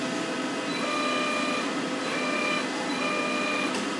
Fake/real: real